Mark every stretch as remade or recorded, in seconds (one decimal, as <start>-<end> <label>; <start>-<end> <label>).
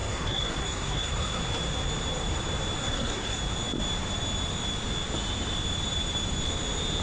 0.0-1.4 remade; 1.4-2.8 recorded; 2.8-3.4 remade; 3.4-7.0 recorded